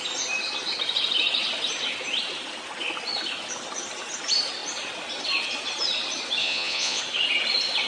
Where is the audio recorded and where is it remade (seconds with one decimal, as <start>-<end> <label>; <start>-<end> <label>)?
0.0-6.4 recorded; 6.4-7.0 remade; 7.0-7.9 recorded